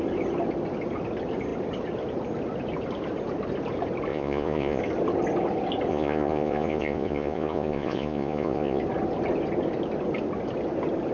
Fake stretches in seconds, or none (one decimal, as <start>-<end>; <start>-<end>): 4.1-4.8; 5.9-8.8